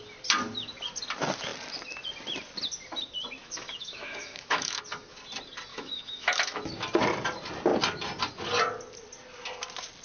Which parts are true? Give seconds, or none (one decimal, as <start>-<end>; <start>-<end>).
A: 0.0-3.4; 4.8-5.7; 6.7-10.0